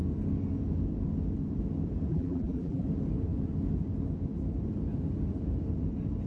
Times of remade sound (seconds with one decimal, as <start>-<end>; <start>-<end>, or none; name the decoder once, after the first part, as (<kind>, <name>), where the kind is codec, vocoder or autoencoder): 2.1-2.8 (vocoder, BigVGAN v2)

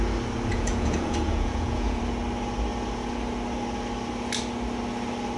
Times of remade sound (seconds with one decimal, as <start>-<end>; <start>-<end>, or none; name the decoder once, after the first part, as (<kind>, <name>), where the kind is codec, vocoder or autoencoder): 0.5-2.0 (vocoder, Vocos)

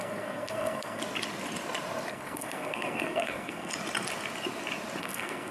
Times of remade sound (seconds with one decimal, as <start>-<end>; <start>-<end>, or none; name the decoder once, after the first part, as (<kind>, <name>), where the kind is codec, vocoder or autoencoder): 0.0-1.0 (codec, SNAC); 2.1-3.7; 5.0-5.5

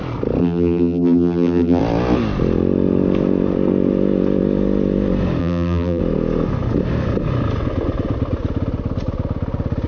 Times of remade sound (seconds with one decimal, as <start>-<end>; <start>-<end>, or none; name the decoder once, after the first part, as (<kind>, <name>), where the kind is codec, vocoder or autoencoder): 0.4-1.8 (vocoder, BigVGAN v2); 5.4-6.0